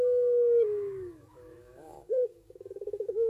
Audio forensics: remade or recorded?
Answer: remade